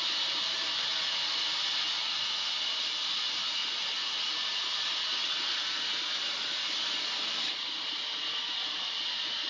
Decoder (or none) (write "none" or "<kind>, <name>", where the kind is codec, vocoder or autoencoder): none